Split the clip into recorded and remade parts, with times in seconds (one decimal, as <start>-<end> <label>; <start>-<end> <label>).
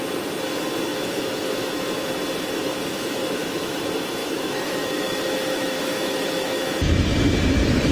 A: 0.0-0.9 recorded; 0.9-2.1 remade; 2.1-2.6 recorded; 2.6-3.8 remade; 3.8-4.2 recorded; 4.2-6.8 remade; 6.8-7.9 recorded